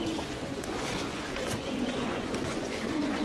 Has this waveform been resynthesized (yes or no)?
yes